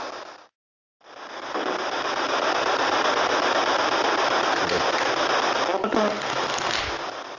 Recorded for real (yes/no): yes